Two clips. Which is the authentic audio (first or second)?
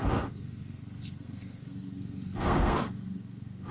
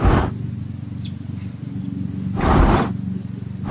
second